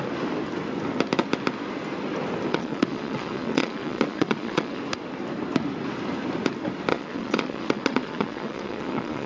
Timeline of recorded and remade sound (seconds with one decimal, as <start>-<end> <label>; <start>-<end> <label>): 0.0-2.5 recorded; 2.5-4.8 remade; 4.8-6.9 recorded; 6.9-9.3 remade